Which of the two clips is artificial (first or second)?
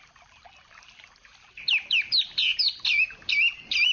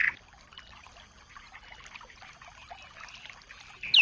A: first